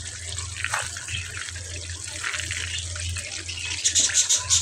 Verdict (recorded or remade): recorded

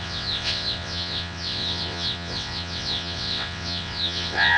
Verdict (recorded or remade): remade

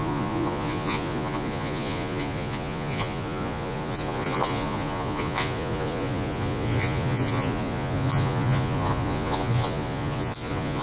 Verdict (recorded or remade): remade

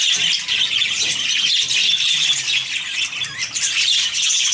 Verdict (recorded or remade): recorded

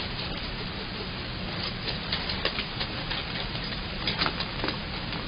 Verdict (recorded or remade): remade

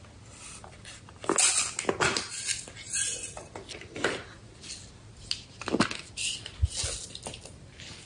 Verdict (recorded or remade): recorded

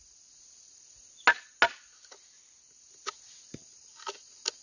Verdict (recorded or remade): recorded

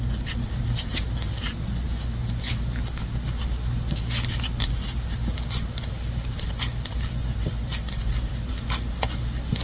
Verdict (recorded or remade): recorded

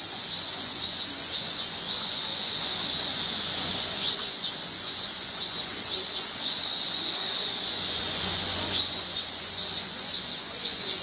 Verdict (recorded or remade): remade